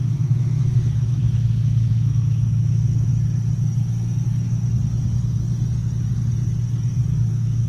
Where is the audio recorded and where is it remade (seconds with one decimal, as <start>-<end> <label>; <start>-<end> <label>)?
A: 0.0-3.1 remade; 3.1-7.3 recorded; 7.3-7.7 remade